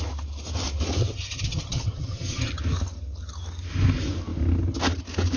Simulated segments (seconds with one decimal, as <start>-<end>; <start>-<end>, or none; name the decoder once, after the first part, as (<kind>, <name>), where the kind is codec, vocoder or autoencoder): 1.0-2.5 (vocoder, HiFi-GAN)